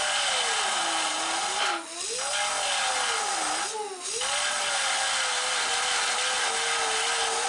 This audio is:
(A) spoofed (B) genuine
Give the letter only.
B